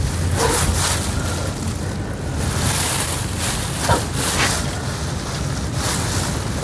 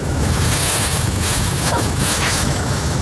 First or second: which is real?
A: first